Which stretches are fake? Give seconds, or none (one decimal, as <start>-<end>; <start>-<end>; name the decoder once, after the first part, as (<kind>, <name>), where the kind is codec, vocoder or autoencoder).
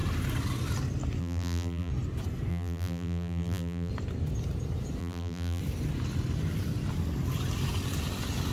1.2-1.9 (vocoder, BigVGAN v2); 2.5-3.9; 5.0-5.6